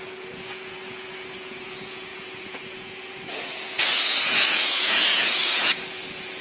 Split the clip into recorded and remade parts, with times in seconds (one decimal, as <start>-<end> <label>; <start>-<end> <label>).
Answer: 0.0-6.4 remade